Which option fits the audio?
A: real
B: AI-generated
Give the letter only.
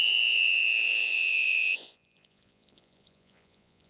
B